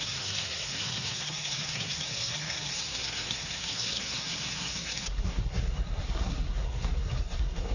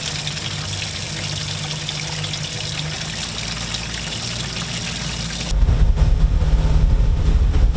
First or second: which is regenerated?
first